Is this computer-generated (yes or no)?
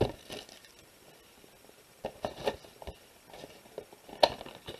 no